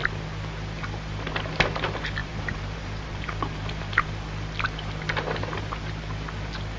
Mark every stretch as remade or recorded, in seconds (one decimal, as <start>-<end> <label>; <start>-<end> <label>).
0.0-2.2 recorded; 2.2-4.1 remade; 4.1-6.8 recorded